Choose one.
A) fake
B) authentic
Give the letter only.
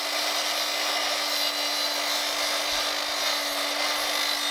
B